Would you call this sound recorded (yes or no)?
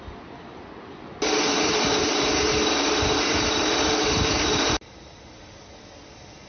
yes